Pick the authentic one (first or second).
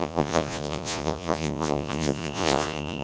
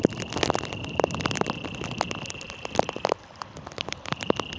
second